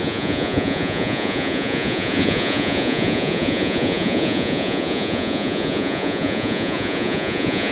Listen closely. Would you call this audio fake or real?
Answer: fake